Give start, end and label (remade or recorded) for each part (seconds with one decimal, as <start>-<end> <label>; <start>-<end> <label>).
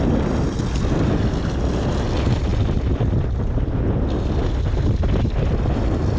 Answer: 0.0-6.2 recorded